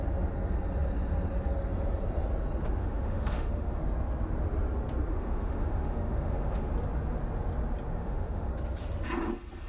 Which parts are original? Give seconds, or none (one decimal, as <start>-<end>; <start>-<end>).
0.0-2.8; 3.8-5.1; 6.7-8.0; 8.5-9.7